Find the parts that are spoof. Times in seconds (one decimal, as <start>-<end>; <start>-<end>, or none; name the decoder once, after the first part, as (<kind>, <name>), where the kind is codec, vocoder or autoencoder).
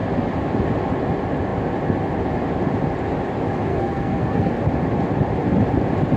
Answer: 3.7-4.5 (codec, SNAC)